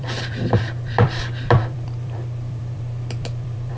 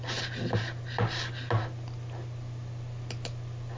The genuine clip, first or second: second